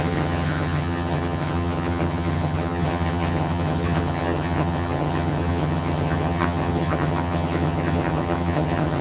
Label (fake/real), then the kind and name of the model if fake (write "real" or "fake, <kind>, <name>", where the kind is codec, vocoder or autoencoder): fake, vocoder, HiFi-GAN